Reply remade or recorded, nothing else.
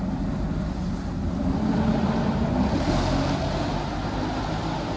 recorded